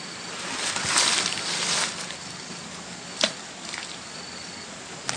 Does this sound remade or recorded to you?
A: recorded